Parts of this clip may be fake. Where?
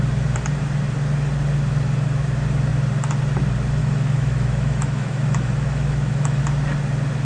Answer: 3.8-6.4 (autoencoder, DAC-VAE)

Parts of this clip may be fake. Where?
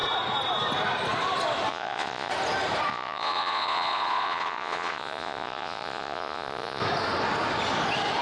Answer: 1.7-2.3 (vocoder, Vocos); 2.9-6.8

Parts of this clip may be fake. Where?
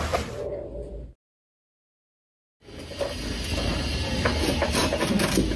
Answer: none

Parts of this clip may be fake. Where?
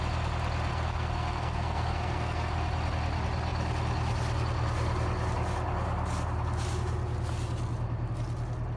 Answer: 0.7-2.5 (codec, SNAC)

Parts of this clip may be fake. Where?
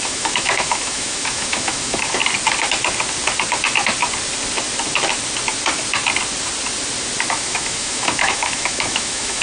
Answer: 0.0-2.2 (autoencoder, DAC-VAE); 7.3-9.4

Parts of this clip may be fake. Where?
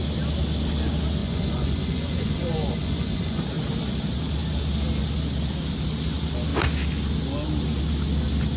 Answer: 1.2-3.4 (vocoder, Vocos)